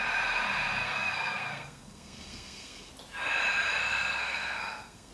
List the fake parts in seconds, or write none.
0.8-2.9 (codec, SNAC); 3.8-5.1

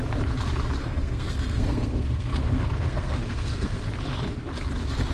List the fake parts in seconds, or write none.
0.8-3.9 (codec, SNAC)